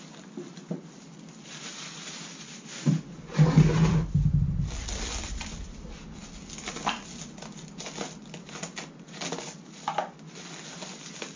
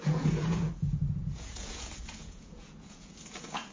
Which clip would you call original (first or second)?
first